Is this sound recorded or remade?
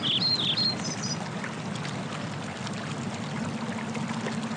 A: recorded